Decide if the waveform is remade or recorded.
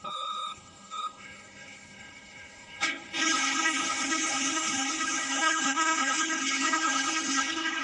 remade